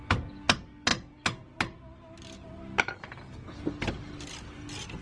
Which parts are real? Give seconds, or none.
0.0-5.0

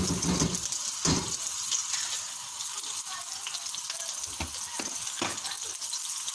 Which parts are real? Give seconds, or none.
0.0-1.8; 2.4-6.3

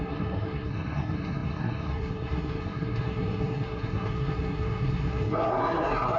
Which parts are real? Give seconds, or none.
none

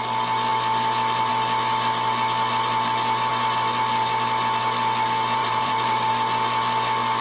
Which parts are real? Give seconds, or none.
0.0-5.4; 6.1-7.2